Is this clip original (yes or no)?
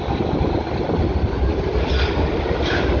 yes